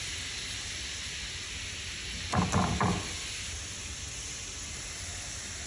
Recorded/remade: recorded